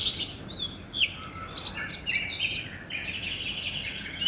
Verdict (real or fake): real